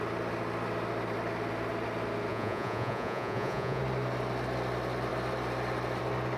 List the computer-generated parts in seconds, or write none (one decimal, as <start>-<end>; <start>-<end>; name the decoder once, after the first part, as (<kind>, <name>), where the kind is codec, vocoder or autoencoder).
2.3-3.8 (vocoder, Vocos)